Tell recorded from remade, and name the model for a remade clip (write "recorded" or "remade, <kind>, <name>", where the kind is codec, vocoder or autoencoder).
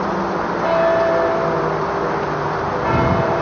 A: remade, vocoder, BigVGAN v2